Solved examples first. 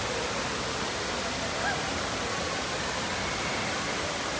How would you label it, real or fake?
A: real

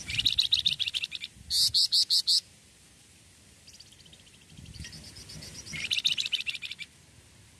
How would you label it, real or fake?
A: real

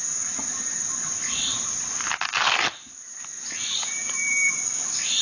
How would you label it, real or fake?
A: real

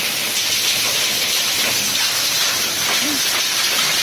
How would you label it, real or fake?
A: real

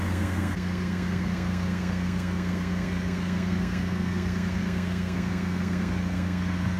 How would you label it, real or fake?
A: fake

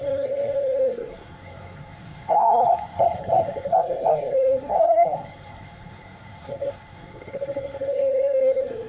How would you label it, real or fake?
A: fake